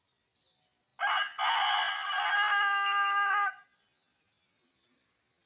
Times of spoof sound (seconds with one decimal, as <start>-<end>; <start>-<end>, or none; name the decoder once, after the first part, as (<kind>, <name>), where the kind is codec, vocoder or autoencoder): none

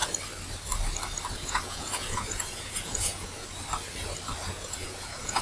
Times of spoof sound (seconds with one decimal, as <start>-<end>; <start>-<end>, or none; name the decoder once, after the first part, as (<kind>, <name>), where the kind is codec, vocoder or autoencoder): 1.3-3.4 (vocoder, Vocos); 4.4-5.4

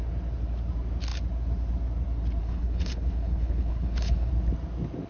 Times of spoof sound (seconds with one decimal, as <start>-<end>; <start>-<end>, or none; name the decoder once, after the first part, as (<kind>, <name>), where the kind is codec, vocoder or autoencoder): 2.4-4.3 (codec, HILCodec)

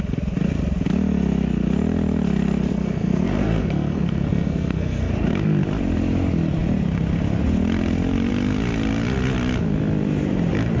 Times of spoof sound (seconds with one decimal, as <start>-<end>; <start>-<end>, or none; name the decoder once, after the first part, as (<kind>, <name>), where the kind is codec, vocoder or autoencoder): 2.7-5.1 (codec, SNAC)

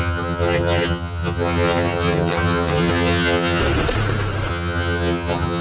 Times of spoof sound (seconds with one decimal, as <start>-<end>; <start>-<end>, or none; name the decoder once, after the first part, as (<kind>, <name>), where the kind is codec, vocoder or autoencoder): 0.0-3.6 (vocoder, HiFi-GAN); 4.5-5.6